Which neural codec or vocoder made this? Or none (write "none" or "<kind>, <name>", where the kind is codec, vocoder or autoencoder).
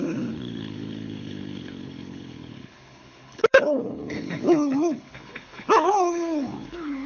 codec, HILCodec